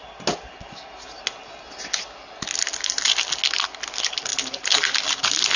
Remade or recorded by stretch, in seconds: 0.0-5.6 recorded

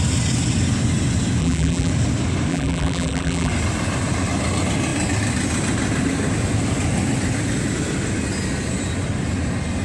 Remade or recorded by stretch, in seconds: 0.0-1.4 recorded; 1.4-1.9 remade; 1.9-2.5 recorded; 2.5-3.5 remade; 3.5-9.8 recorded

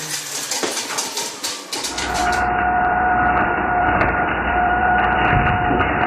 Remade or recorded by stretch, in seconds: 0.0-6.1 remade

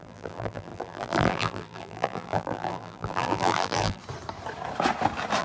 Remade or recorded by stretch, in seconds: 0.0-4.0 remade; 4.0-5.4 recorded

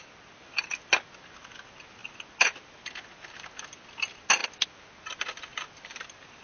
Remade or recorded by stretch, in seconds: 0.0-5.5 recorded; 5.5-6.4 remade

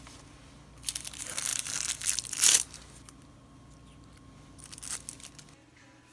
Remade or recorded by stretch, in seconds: 0.0-6.1 recorded